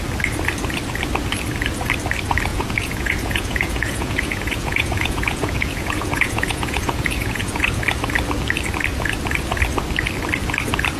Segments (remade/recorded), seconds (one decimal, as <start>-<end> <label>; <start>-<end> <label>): 0.0-2.5 recorded; 2.5-7.8 remade; 7.8-11.0 recorded